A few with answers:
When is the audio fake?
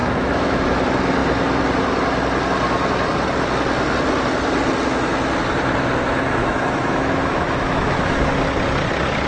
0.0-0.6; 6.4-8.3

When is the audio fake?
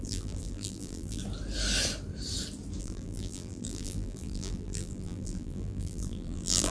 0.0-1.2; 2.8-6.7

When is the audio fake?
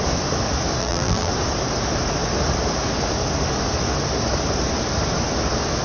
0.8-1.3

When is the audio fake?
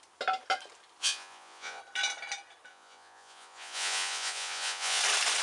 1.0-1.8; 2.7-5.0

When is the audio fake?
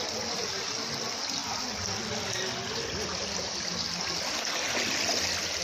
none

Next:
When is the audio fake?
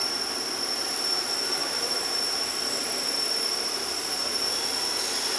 0.0-0.5; 1.6-2.4; 2.8-4.4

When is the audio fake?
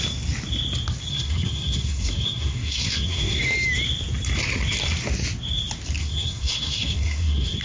1.1-3.4; 6.0-7.6